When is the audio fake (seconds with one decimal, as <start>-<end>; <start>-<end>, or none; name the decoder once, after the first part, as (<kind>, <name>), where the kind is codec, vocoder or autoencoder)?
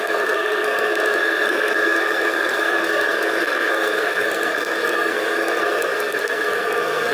0.0-7.1 (codec, SNAC)